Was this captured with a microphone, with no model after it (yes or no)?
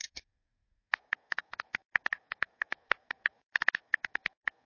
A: no